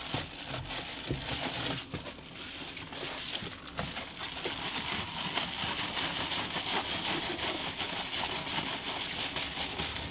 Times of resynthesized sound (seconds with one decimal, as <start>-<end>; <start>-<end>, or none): none